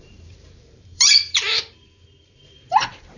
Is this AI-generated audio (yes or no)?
yes